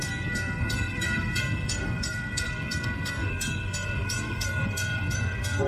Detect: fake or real fake